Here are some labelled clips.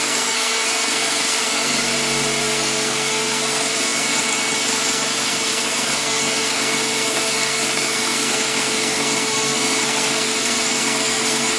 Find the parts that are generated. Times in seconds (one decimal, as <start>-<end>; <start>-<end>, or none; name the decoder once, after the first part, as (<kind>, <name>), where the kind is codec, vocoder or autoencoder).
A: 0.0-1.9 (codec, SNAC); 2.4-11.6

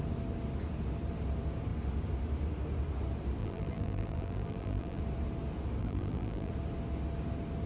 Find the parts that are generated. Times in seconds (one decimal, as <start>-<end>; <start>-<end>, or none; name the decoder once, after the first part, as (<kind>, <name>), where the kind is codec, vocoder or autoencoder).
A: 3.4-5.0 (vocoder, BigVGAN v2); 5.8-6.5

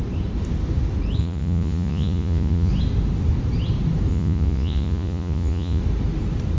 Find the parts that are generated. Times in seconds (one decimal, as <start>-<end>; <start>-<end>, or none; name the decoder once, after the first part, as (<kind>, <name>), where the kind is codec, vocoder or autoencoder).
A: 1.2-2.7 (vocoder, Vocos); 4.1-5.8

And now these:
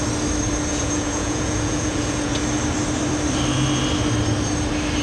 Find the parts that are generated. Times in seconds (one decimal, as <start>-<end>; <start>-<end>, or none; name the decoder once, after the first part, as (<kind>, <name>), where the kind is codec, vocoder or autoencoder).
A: 0.7-2.4 (vocoder, Vocos)

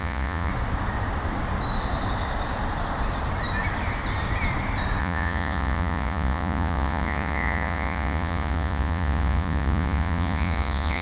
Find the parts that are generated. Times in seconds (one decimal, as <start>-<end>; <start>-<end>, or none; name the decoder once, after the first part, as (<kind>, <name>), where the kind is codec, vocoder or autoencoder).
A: 0.0-0.5 (vocoder, Vocos); 5.0-11.0

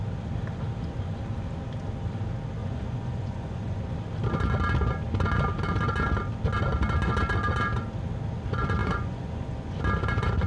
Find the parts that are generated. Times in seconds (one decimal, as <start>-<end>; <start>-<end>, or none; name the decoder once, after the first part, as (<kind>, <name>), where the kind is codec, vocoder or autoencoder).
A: 2.6-3.8 (vocoder, Vocos); 8.8-9.8